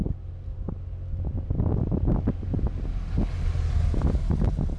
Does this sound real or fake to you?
real